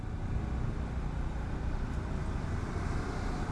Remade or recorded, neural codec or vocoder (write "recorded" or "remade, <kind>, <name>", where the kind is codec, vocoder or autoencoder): recorded